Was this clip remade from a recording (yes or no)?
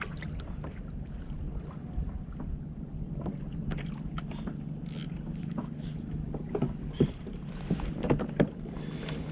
no